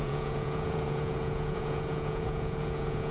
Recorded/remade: remade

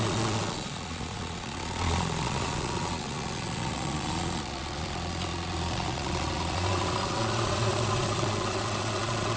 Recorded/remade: remade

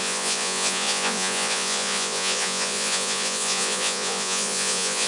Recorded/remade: remade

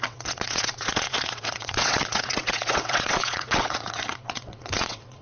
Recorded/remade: remade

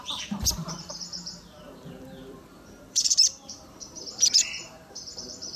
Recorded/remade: remade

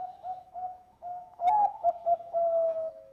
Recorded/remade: remade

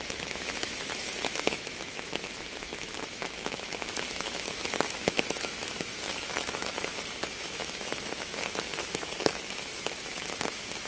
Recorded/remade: remade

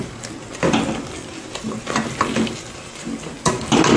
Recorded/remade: recorded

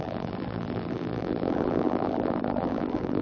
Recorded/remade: remade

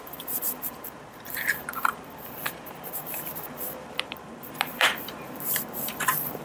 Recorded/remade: remade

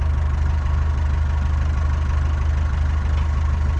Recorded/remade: recorded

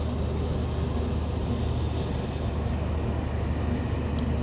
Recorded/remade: recorded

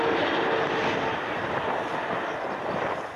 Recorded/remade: recorded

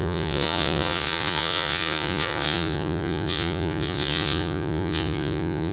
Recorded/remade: remade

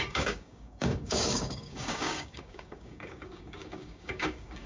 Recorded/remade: remade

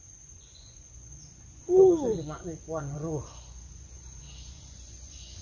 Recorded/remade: remade